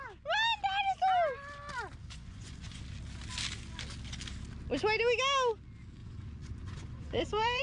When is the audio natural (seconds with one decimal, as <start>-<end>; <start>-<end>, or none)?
0.0-2.0; 2.8-6.0